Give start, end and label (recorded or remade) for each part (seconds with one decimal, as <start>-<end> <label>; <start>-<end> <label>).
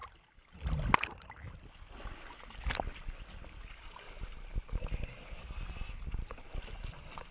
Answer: 0.0-7.3 recorded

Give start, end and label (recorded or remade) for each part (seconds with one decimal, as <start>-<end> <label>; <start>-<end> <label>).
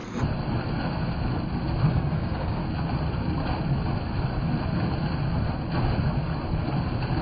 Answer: 0.0-1.9 recorded; 1.9-2.6 remade; 2.6-7.2 recorded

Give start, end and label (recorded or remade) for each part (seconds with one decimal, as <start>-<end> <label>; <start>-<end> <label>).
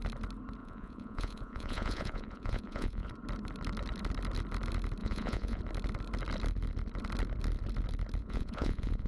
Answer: 0.0-0.6 recorded; 0.6-3.1 remade; 3.1-5.0 recorded; 5.0-5.6 remade; 5.6-8.2 recorded; 8.2-9.1 remade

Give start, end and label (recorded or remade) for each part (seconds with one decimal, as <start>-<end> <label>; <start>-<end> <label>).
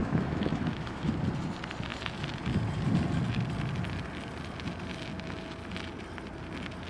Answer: 0.0-1.1 remade; 1.1-6.9 recorded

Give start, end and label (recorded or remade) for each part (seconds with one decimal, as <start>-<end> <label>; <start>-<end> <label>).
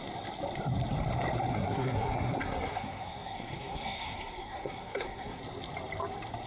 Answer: 0.0-1.5 recorded; 1.5-5.4 remade; 5.4-6.5 recorded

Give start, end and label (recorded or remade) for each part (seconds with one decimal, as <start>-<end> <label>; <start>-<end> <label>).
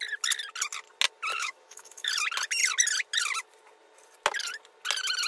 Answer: 0.0-1.3 recorded; 1.3-2.1 remade; 2.1-5.3 recorded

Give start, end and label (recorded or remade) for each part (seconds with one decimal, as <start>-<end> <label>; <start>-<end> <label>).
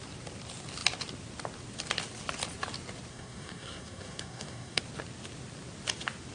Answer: 0.0-3.1 recorded; 3.1-4.8 remade; 4.8-6.3 recorded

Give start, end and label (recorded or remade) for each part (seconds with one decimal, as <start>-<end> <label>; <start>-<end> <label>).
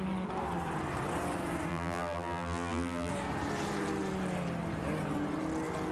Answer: 0.0-1.7 recorded; 1.7-3.1 remade; 3.1-5.9 recorded